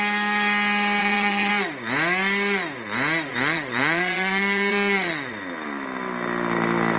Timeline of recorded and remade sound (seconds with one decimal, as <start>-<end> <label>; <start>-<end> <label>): 0.0-1.0 recorded; 1.0-1.5 remade; 1.5-3.3 recorded; 3.3-5.3 remade; 5.3-7.0 recorded